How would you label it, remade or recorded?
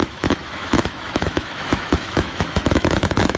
remade